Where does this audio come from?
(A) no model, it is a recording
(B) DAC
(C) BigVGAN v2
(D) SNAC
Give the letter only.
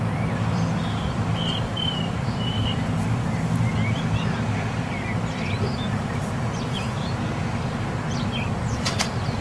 C